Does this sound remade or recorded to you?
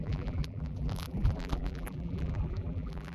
remade